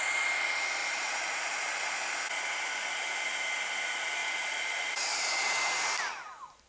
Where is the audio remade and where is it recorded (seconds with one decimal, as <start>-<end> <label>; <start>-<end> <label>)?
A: 0.0-0.8 recorded; 0.8-1.7 remade; 1.7-4.2 recorded; 4.2-6.1 remade; 6.1-6.7 recorded

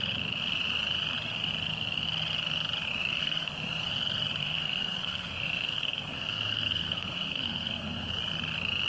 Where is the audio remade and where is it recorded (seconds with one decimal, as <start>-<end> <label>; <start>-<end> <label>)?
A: 0.0-3.2 recorded; 3.2-3.9 remade; 3.9-4.4 recorded; 4.4-8.1 remade; 8.1-8.9 recorded

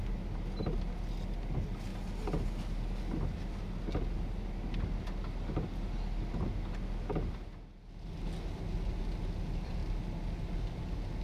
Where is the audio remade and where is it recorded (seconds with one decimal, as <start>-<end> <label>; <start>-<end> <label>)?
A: 0.0-11.2 recorded

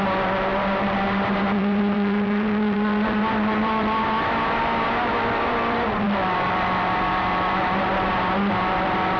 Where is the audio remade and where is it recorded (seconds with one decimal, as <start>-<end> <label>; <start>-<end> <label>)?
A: 0.0-9.2 remade

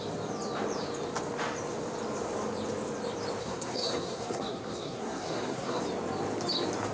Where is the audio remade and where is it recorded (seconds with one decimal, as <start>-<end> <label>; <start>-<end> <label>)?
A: 0.0-3.4 recorded; 3.4-5.8 remade; 5.8-6.9 recorded

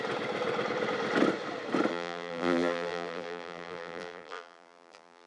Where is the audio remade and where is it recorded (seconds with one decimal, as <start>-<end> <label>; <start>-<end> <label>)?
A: 0.0-1.9 recorded; 1.9-5.3 remade

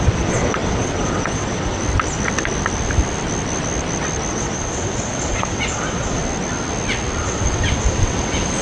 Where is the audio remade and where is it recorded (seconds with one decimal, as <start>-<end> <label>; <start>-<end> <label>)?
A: 0.0-1.8 remade; 1.8-4.3 recorded; 4.3-6.2 remade; 6.2-7.2 recorded; 7.2-8.6 remade

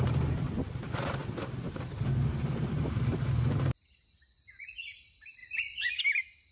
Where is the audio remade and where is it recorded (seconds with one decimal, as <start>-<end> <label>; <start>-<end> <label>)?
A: 0.0-1.2 remade; 1.2-2.3 recorded; 2.3-3.1 remade; 3.1-4.6 recorded; 4.6-6.5 remade